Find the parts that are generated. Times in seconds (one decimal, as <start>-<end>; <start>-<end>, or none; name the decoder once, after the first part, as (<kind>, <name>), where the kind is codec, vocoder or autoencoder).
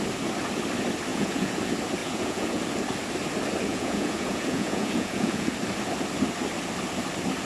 1.1-1.6 (vocoder, Vocos); 2.0-2.6; 3.7-5.5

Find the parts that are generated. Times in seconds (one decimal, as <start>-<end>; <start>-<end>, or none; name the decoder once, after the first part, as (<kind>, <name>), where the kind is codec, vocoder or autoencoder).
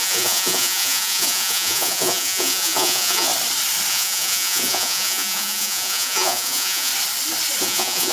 0.0-3.3 (vocoder, Vocos); 3.9-6.9; 7.6-8.1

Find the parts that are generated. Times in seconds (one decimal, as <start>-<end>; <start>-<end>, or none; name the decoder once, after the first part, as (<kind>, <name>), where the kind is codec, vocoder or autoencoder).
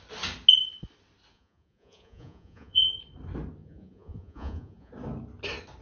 1.3-2.9 (vocoder, Vocos); 3.6-4.9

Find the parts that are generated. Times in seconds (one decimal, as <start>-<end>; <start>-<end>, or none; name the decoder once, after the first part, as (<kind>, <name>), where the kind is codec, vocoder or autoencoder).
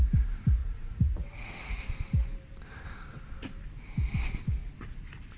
0.6-1.8 (vocoder, Vocos)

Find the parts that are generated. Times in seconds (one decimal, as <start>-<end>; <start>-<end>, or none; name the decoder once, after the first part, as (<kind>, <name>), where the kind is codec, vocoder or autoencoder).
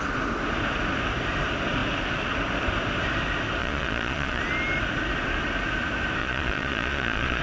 3.6-4.4 (vocoder, Vocos); 6.2-7.4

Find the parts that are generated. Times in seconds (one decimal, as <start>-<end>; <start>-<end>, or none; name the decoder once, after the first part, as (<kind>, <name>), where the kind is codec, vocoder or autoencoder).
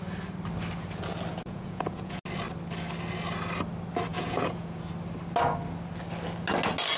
1.3-2.2 (vocoder, Vocos); 4.1-4.8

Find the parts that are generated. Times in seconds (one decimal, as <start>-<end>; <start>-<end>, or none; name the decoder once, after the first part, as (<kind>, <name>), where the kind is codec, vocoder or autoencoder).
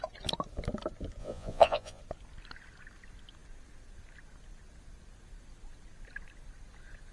1.2-2.0 (vocoder, Vocos)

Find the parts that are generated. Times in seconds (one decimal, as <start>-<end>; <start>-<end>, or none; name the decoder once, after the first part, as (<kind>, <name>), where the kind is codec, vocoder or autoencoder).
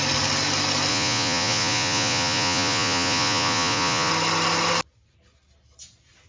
0.9-4.1 (vocoder, Vocos)